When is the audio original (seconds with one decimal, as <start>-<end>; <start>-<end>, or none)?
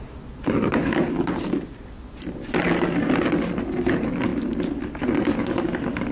0.0-4.3; 5.6-6.1